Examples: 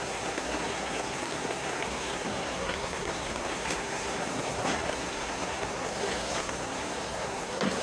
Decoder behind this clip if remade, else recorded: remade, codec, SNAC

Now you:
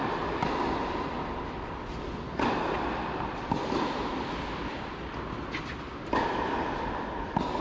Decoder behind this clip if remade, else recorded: recorded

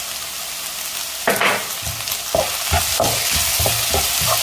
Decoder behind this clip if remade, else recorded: recorded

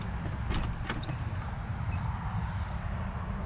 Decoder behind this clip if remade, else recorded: recorded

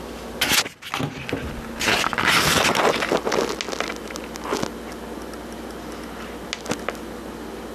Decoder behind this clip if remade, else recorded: recorded